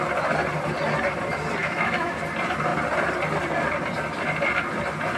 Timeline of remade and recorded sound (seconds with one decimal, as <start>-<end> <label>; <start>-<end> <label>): 0.0-1.6 recorded; 1.6-2.2 remade; 2.2-5.2 recorded